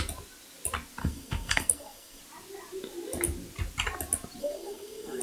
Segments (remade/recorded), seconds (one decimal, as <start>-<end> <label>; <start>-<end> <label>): 0.0-1.0 recorded; 1.0-2.2 remade; 2.2-4.4 recorded; 4.4-5.2 remade